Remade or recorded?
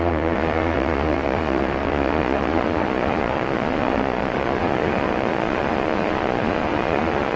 remade